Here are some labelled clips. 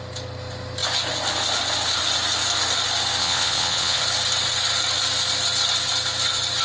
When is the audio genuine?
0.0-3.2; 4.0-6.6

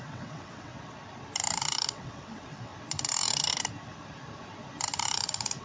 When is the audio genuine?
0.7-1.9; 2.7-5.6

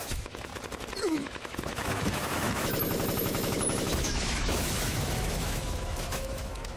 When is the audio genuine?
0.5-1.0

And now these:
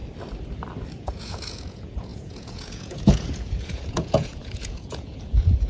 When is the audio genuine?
0.0-1.0

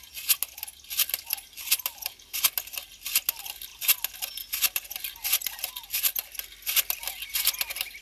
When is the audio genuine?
0.0-8.0

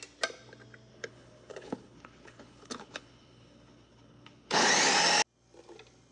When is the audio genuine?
0.0-0.9; 4.6-6.1

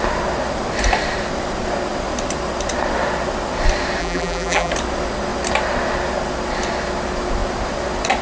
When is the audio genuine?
0.0-4.0; 4.7-8.2